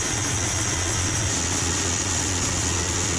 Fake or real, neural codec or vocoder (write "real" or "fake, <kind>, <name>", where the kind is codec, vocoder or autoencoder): fake, vocoder, Vocos